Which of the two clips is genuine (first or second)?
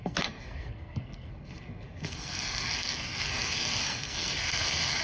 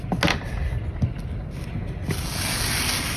second